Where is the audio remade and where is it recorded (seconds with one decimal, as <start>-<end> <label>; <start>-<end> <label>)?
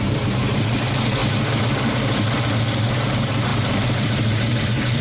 0.0-1.2 remade; 1.2-2.4 recorded; 2.4-5.0 remade